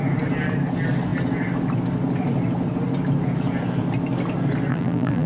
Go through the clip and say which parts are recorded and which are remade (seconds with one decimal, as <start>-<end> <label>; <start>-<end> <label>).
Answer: 0.0-4.7 recorded; 4.7-5.3 remade